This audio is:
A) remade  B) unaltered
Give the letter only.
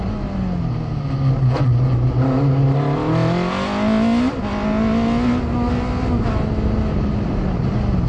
B